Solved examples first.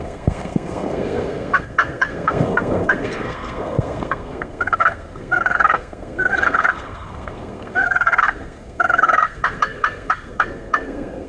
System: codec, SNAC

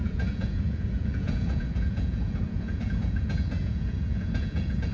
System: vocoder, Vocos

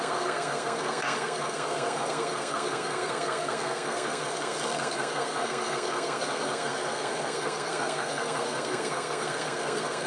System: codec, SNAC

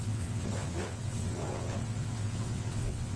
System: vocoder, WaveNeXt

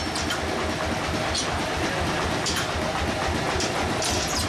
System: none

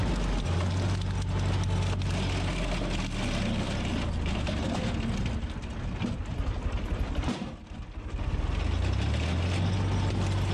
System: none